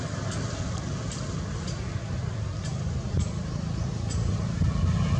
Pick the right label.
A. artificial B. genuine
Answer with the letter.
B